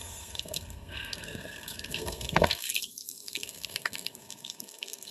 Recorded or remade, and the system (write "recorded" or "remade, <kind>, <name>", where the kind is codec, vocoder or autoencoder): remade, codec, SNAC